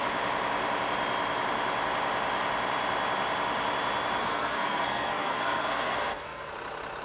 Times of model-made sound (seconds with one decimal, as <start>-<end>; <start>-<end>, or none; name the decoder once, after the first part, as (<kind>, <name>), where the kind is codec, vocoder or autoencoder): 4.2-6.5 (codec, SNAC)